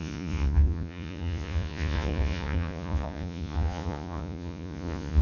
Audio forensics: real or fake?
fake